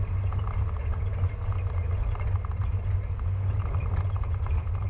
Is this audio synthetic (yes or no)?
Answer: no